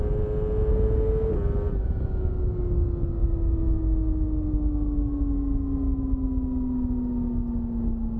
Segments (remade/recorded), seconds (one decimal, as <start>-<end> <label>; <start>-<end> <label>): 0.0-8.2 recorded